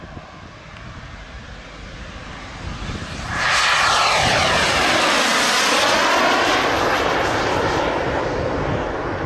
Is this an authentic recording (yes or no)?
yes